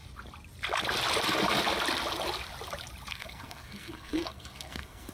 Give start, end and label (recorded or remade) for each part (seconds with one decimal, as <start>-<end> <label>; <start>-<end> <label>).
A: 0.0-3.1 recorded; 3.1-5.1 remade